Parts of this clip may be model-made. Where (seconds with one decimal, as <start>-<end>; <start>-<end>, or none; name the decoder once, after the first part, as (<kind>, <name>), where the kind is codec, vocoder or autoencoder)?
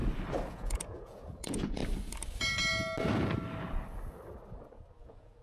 0.5-1.8 (vocoder, Vocos); 5.0-5.4